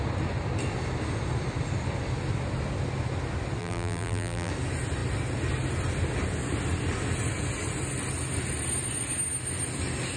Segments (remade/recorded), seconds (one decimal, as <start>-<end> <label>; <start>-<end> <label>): 0.0-3.6 recorded; 3.6-4.5 remade; 4.5-10.2 recorded